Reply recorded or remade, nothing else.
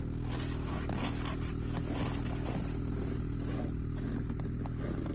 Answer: recorded